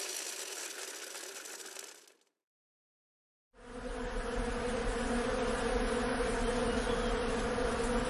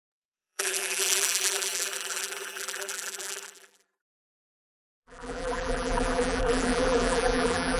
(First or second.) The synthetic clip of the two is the second